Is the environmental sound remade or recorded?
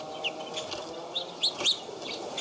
recorded